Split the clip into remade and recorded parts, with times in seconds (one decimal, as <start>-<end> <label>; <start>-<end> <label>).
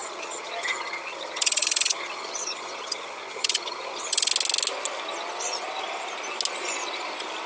0.0-4.3 remade; 4.3-7.5 recorded